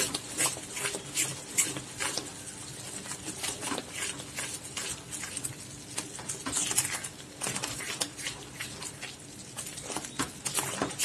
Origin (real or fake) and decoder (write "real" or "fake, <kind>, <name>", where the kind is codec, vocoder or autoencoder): real